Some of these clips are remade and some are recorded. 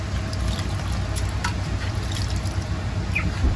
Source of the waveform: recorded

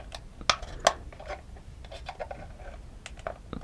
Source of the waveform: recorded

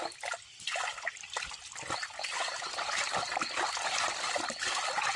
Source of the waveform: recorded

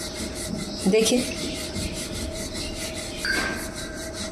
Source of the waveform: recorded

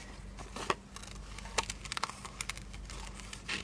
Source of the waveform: recorded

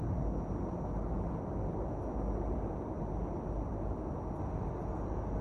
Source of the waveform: recorded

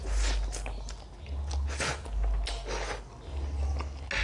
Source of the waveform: recorded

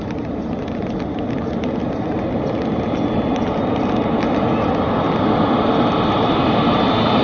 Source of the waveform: recorded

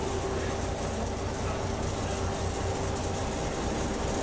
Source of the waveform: recorded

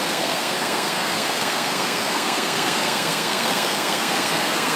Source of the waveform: remade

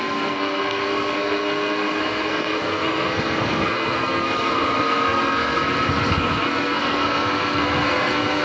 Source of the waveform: remade